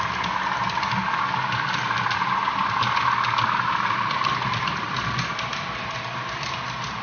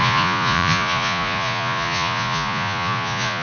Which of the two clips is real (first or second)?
first